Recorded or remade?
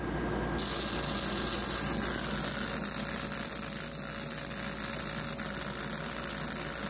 recorded